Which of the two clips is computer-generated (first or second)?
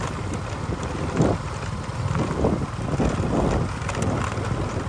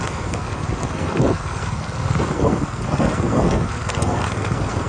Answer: second